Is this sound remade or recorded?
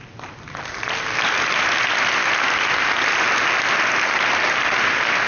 recorded